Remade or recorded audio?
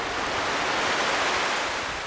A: recorded